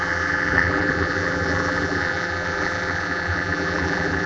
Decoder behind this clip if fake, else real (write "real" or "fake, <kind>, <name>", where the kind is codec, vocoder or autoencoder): fake, vocoder, BigVGAN v2